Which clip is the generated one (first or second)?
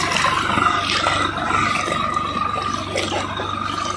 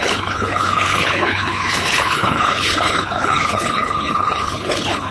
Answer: second